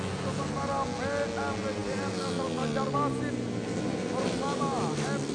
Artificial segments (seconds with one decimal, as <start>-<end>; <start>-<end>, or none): none